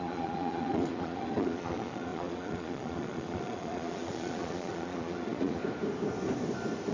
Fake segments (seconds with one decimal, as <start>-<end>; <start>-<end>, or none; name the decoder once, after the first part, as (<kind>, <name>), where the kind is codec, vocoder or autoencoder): 0.0-5.6 (vocoder, Vocos)